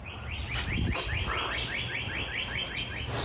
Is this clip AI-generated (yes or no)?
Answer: no